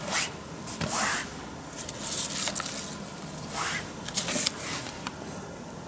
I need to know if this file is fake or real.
real